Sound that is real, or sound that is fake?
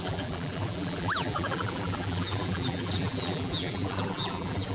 fake